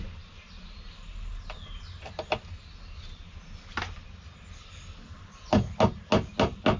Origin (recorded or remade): recorded